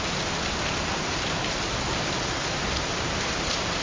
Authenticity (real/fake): real